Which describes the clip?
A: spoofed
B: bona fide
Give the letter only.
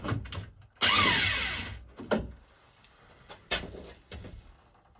B